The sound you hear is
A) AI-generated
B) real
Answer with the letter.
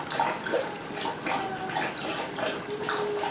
B